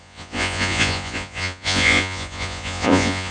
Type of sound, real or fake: fake